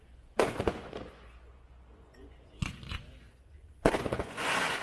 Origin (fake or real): fake